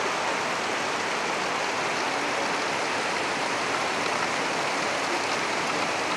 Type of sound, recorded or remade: recorded